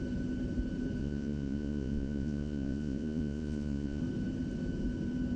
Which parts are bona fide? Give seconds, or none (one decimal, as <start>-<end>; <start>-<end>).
0.0-1.0; 4.0-5.4